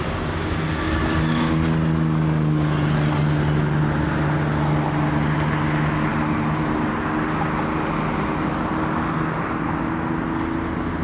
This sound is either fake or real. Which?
real